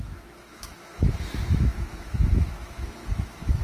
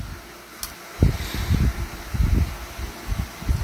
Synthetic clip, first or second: first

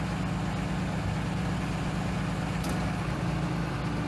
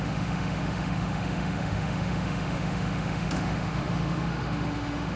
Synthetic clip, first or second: second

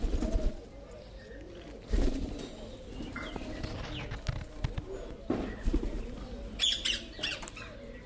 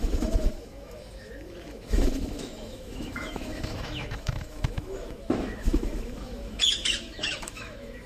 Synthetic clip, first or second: second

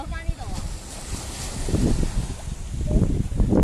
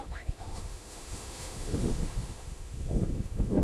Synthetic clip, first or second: second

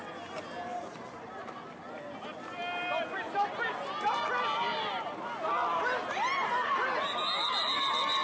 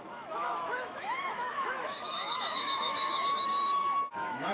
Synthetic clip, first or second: second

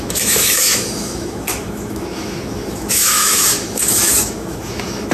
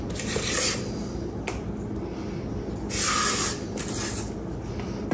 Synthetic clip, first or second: first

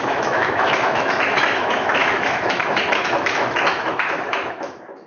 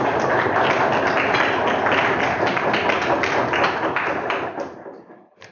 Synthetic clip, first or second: first